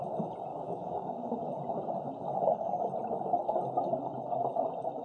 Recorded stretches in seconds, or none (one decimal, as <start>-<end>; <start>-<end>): 0.0-0.5; 1.3-5.0